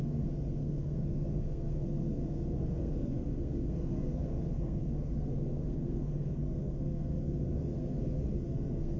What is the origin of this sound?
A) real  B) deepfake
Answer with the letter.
B